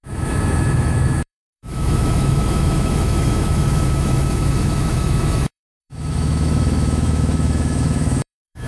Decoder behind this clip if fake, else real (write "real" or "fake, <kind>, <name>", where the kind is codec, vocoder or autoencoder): fake, autoencoder, DAC-VAE